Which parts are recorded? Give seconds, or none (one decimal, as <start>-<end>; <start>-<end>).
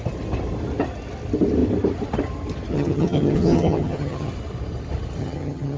0.0-2.7; 4.3-5.2